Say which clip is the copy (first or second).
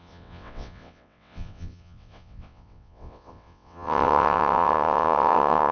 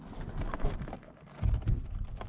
first